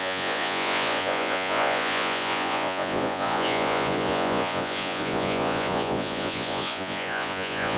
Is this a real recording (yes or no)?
no